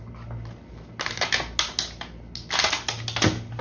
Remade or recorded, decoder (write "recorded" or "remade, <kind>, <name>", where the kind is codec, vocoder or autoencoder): recorded